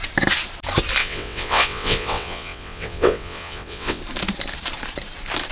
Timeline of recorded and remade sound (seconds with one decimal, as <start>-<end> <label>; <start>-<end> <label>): 0.0-1.0 recorded; 1.0-4.0 remade; 4.0-5.5 recorded